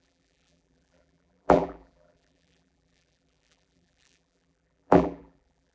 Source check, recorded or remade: remade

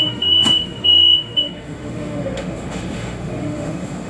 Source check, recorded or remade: remade